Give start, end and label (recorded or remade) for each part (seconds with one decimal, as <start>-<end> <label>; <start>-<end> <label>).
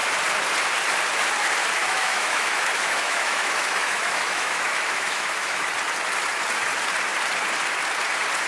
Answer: 0.0-1.8 recorded; 1.8-5.7 remade; 5.7-8.5 recorded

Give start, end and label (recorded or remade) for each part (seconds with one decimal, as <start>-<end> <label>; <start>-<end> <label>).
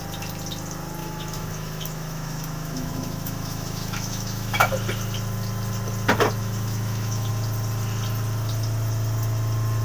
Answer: 0.0-1.0 recorded; 1.0-4.7 remade; 4.7-6.4 recorded; 6.4-7.3 remade; 7.3-9.8 recorded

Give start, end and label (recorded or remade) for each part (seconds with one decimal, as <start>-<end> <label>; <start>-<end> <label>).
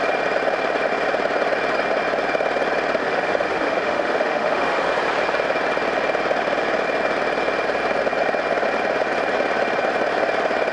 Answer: 0.0-3.0 recorded; 3.0-4.9 remade; 4.9-10.7 recorded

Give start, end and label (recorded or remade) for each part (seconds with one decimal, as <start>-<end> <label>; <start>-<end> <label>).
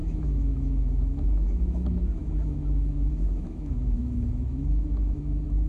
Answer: 0.0-5.7 remade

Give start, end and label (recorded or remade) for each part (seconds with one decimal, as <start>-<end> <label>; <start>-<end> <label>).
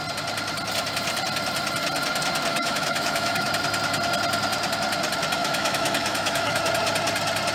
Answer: 0.0-2.5 recorded; 2.5-3.5 remade; 3.5-5.4 recorded; 5.4-6.6 remade; 6.6-7.5 recorded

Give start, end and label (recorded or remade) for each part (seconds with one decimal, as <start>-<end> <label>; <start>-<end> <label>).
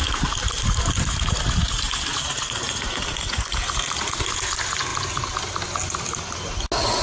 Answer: 0.0-7.0 recorded